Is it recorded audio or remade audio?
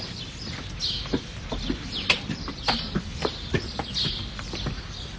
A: recorded